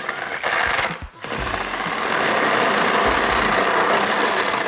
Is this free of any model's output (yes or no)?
yes